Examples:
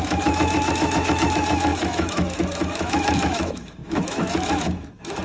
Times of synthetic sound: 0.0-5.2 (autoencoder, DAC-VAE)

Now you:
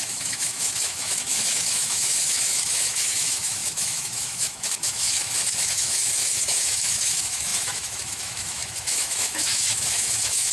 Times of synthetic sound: 0.0-10.5 (autoencoder, DAC-VAE)